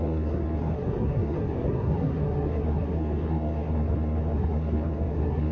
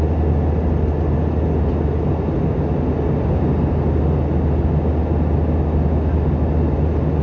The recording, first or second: second